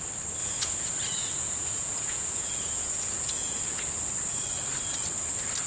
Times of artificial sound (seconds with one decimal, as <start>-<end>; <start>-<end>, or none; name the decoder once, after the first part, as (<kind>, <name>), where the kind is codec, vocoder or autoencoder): 0.4-3.8 (vocoder, Vocos)